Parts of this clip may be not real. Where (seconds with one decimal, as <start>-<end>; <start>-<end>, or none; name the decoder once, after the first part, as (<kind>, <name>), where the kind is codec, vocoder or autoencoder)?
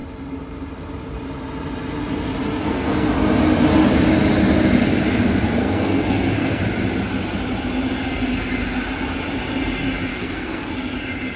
2.6-3.1 (codec, SNAC); 5.6-6.6; 10.1-10.7